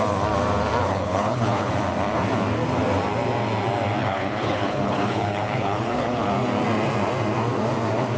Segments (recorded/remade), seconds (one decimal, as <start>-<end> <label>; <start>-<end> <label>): 0.0-0.8 recorded; 0.8-1.7 remade; 1.7-4.0 recorded; 4.0-6.3 remade; 6.3-8.2 recorded